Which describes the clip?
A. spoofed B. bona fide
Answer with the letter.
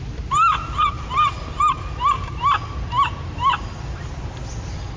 B